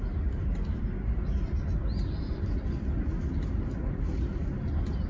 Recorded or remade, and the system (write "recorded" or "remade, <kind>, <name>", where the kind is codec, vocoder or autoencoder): recorded